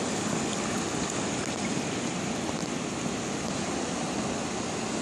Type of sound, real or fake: real